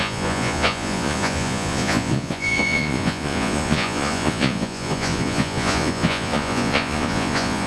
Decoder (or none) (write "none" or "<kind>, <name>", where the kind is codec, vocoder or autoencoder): vocoder, Vocos